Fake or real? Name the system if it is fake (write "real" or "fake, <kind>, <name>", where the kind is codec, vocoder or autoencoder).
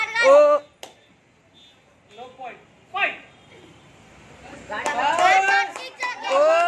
real